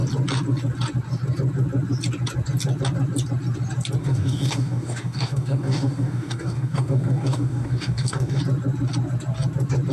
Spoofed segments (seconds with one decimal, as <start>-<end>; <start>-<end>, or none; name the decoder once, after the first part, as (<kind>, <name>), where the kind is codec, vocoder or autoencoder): 4.0-8.4 (codec, DAC)